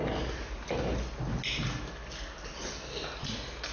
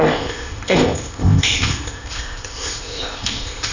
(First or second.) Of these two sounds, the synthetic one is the second